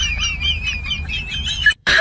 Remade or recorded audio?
remade